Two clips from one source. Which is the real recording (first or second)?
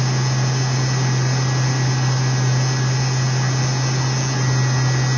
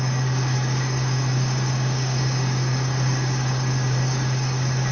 first